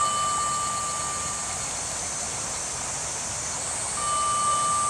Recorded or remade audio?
recorded